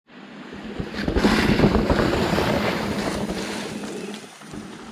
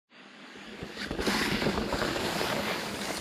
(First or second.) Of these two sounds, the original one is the first